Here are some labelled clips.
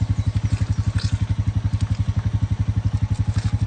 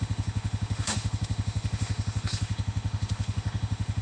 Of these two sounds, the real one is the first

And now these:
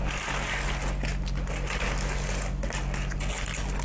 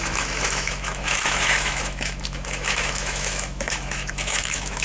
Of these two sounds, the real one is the first